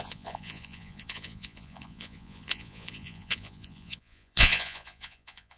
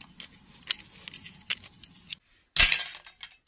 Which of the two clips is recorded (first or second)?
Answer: second